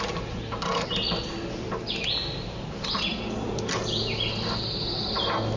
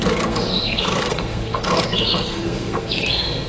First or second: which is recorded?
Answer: first